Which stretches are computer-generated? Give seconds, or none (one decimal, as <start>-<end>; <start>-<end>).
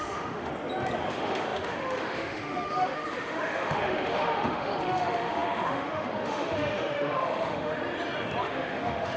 0.0-0.5; 1.1-7.8; 8.4-9.2